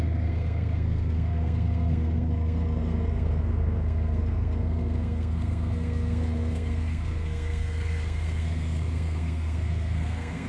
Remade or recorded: remade